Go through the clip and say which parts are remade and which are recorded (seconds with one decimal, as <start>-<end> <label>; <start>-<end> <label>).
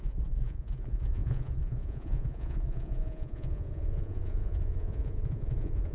0.0-5.9 remade